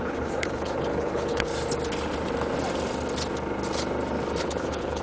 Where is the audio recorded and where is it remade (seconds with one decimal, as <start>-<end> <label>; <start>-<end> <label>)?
0.0-1.5 remade; 1.5-4.4 recorded; 4.4-5.0 remade